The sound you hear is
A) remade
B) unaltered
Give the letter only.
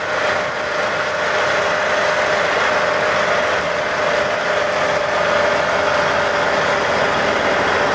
B